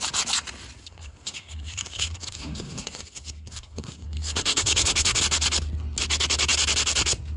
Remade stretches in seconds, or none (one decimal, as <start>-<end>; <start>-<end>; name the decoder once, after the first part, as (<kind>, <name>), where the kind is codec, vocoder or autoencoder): 0.8-5.2 (codec, SNAC)